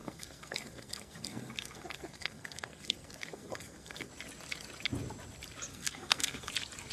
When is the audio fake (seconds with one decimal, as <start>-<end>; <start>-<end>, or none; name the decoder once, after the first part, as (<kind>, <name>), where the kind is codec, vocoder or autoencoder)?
0.0-4.1 (codec, SNAC); 5.7-6.5